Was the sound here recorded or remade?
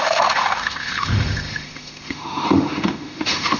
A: remade